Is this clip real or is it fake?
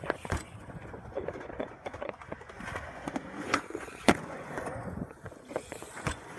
fake